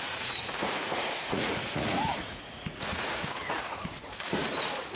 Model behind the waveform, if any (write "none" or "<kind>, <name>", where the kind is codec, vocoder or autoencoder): vocoder, Vocos